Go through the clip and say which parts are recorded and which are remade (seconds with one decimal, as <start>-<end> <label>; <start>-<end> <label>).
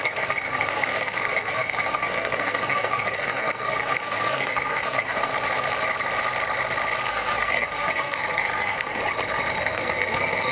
0.0-5.3 remade; 5.3-7.1 recorded; 7.1-9.0 remade; 9.0-9.5 recorded; 9.5-10.5 remade